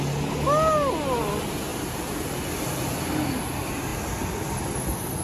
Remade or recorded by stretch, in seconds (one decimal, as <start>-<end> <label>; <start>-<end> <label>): 0.0-1.7 recorded; 1.7-2.3 remade; 2.3-5.2 recorded